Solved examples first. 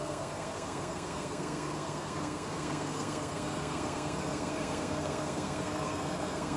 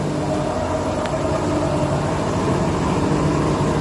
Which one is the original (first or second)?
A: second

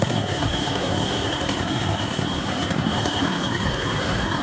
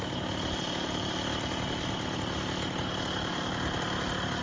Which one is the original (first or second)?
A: second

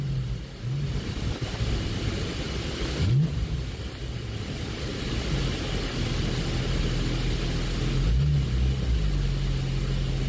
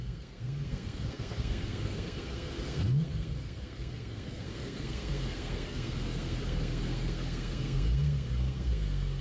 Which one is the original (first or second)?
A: first